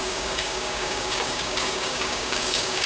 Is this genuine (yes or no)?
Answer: no